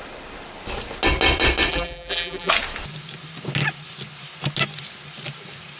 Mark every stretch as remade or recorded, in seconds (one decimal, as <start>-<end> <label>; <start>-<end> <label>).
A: 0.0-1.7 recorded; 1.7-2.5 remade; 2.5-5.8 recorded